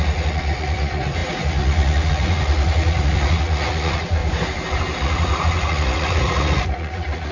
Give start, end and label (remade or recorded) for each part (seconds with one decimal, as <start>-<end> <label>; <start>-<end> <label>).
0.0-4.2 remade; 4.2-5.0 recorded; 5.0-7.3 remade